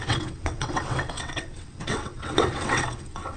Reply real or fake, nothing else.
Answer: fake